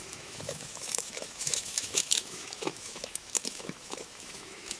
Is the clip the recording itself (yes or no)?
no